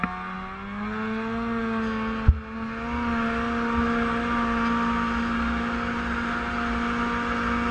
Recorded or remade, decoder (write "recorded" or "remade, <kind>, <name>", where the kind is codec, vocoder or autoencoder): recorded